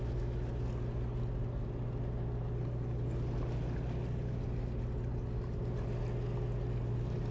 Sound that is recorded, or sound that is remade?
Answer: recorded